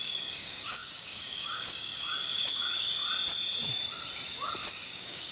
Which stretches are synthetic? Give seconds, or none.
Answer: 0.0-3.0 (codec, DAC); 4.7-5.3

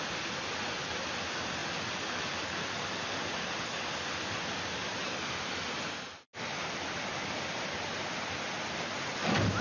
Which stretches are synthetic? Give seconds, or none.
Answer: none